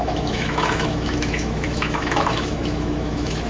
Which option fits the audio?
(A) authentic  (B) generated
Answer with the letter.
B